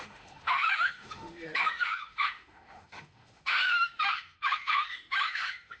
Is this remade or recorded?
remade